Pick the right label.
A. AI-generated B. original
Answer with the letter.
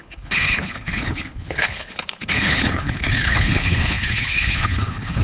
A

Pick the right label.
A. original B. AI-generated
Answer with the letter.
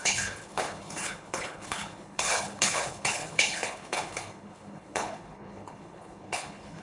B